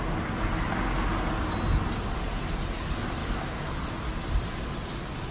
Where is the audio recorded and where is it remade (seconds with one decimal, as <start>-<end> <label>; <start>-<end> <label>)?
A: 0.0-3.2 recorded; 3.2-3.7 remade; 3.7-5.3 recorded

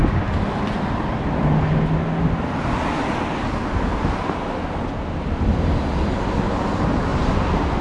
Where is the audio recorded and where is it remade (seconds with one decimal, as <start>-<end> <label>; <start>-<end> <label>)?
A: 0.0-7.8 recorded

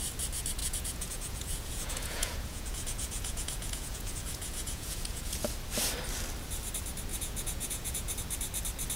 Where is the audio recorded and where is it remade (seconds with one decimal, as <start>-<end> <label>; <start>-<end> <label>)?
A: 0.0-0.6 recorded; 0.6-5.5 remade; 5.5-7.1 recorded; 7.1-8.2 remade; 8.2-9.0 recorded

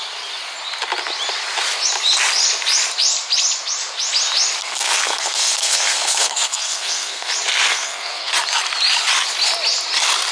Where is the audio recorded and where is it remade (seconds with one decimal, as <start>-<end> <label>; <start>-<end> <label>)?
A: 0.0-4.6 recorded; 4.6-7.3 remade; 7.3-7.7 recorded; 7.7-8.3 remade; 8.3-10.3 recorded

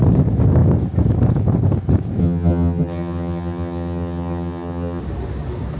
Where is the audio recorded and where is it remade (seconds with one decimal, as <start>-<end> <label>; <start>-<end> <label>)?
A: 0.0-2.2 recorded; 2.2-5.0 remade; 5.0-5.8 recorded

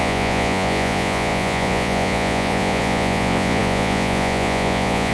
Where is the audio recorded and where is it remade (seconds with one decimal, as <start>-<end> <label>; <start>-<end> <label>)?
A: 0.0-5.1 remade

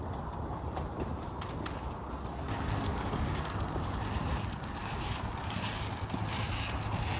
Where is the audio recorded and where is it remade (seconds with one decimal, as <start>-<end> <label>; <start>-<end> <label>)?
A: 0.0-2.9 recorded; 2.9-3.4 remade; 3.4-4.8 recorded; 4.8-5.8 remade; 5.8-7.2 recorded

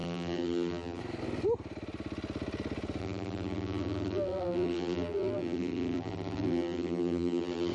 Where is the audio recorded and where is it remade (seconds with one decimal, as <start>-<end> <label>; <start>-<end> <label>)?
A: 0.0-1.0 remade; 1.0-3.0 recorded; 3.0-7.7 remade